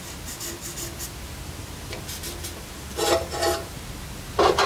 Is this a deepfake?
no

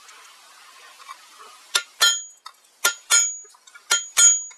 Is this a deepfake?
no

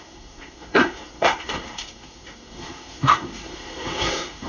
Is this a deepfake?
yes